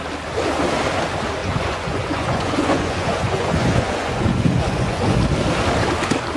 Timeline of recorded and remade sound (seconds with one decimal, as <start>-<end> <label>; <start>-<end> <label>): 0.0-1.4 recorded; 1.4-5.2 remade; 5.2-6.4 recorded